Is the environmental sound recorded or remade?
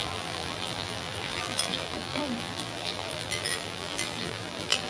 remade